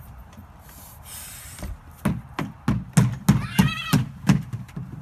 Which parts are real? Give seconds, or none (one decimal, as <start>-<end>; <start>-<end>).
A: 0.4-3.4